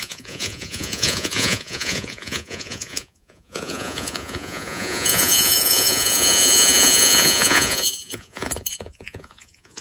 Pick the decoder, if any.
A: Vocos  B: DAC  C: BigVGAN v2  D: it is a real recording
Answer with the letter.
A